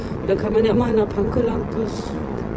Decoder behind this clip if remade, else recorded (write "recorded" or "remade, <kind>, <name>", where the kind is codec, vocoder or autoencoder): remade, vocoder, Vocos